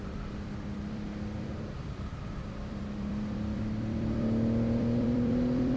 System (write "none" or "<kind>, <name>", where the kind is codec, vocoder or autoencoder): vocoder, BigVGAN v2